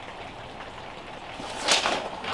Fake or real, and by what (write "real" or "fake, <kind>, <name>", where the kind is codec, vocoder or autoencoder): real